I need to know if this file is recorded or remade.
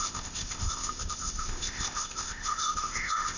remade